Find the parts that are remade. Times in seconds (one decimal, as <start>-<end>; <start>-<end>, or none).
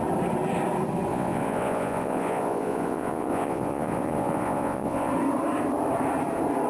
1.1-5.1